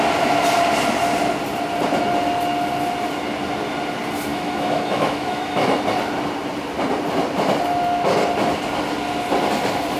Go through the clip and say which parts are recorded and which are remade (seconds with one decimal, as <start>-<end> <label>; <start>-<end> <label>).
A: 0.0-4.3 recorded; 4.3-5.7 remade; 5.7-10.0 recorded